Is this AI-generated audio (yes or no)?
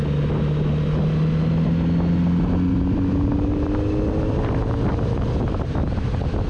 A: no